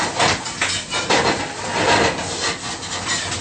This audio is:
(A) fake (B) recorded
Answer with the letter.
B